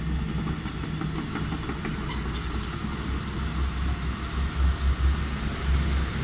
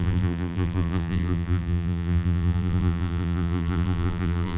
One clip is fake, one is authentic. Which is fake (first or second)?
second